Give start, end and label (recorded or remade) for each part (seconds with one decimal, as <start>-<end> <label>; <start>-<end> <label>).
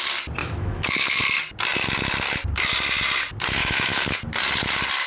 0.0-0.4 recorded; 0.4-1.2 remade; 1.2-3.6 recorded; 3.6-4.2 remade; 4.2-5.1 recorded